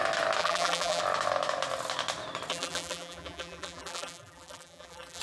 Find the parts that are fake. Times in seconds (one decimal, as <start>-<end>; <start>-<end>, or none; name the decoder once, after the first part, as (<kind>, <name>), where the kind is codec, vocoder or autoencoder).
0.4-1.0 (vocoder, BigVGAN v2); 2.5-5.2